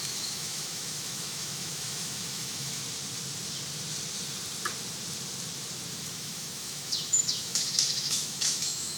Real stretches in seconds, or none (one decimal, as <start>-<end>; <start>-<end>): 2.8-5.9